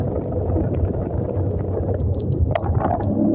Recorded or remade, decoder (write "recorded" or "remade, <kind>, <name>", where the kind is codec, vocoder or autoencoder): recorded